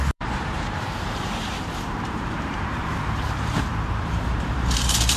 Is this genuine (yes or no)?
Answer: no